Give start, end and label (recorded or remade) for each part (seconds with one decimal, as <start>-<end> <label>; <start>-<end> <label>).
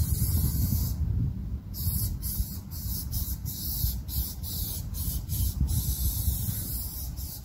0.0-7.4 recorded